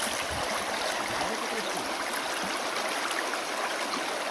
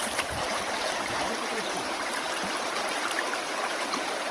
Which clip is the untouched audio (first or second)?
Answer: first